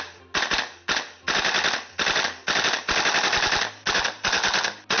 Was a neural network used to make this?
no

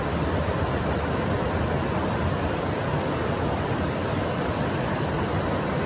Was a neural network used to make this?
yes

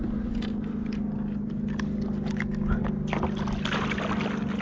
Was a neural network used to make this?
no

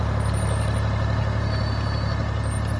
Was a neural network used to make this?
no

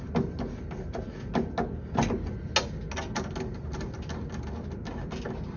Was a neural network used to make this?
no